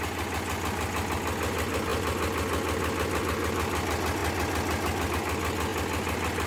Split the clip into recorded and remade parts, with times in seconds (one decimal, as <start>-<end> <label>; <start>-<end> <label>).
0.0-6.5 recorded